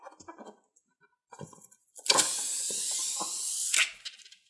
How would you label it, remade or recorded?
recorded